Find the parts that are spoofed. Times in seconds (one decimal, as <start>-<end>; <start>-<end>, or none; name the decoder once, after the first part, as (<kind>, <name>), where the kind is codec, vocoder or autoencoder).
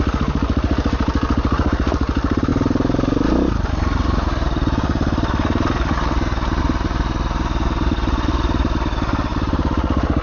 9.3-10.2 (vocoder, BigVGAN v2)